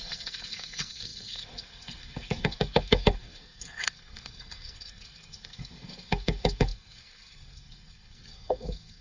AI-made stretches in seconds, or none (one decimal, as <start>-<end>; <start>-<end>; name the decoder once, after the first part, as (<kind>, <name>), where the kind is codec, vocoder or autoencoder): 0.0-9.0 (codec, SNAC)